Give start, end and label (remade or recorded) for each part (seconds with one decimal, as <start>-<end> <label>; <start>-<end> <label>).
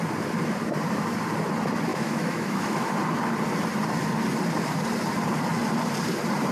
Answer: 0.0-1.9 recorded; 1.9-2.9 remade; 2.9-6.5 recorded